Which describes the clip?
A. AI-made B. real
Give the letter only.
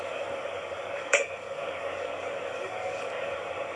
A